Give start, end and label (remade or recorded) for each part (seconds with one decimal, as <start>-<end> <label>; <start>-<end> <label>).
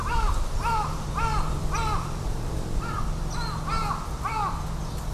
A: 0.0-3.0 remade; 3.0-5.1 recorded